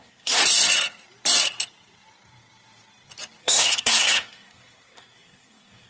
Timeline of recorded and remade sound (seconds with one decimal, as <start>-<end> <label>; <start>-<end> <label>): 0.0-0.4 remade; 0.4-3.4 recorded; 3.4-5.9 remade